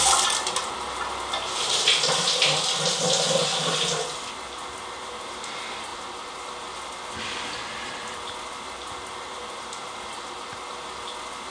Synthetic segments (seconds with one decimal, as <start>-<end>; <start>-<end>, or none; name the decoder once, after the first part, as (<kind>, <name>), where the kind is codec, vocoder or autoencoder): none